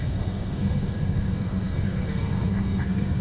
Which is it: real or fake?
fake